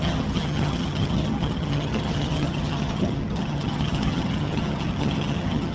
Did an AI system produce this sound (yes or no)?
yes